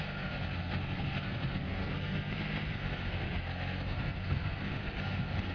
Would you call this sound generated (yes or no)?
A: yes